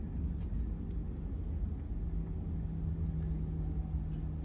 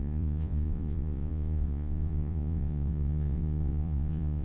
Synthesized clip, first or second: second